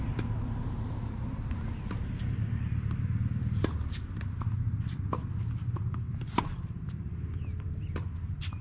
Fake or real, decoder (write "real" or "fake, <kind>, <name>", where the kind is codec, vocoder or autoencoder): real